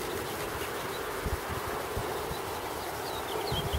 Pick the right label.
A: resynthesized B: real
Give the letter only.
B